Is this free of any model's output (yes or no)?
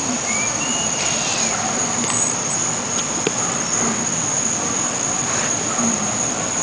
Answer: no